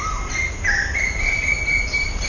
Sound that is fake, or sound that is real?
real